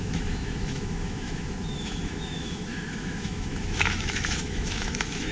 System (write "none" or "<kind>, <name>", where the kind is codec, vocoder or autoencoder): autoencoder, DAC-VAE